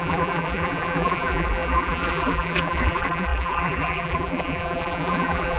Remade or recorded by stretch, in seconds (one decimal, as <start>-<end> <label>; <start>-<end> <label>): 0.0-5.6 remade